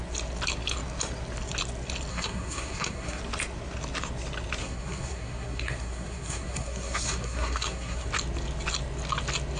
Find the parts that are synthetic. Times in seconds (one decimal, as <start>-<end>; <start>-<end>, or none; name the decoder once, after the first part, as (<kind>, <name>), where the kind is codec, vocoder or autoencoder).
2.1-3.2 (codec, SNAC); 4.6-8.1